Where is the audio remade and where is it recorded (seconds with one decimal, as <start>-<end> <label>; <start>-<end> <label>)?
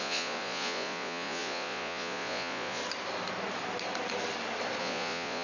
0.0-2.8 remade; 2.8-4.8 recorded; 4.8-5.4 remade